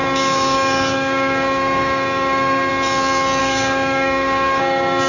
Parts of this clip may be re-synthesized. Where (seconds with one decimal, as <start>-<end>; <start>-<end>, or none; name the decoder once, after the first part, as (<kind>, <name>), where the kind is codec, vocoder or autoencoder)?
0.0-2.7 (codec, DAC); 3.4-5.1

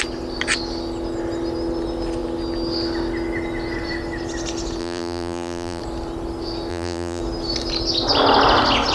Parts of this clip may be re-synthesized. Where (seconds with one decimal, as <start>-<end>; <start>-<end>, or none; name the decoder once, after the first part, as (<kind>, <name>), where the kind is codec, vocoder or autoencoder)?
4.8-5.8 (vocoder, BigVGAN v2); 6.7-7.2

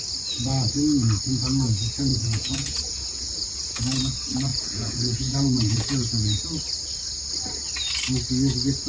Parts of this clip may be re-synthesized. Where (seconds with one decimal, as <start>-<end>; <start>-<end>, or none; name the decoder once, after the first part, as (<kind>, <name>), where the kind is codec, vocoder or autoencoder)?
2.1-3.8 (vocoder, Vocos); 4.5-6.4

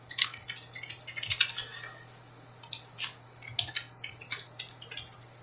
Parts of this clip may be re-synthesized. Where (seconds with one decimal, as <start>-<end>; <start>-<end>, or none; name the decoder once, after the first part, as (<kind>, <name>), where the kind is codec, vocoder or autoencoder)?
none